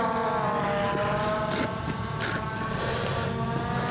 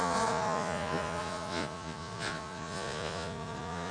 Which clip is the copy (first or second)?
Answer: second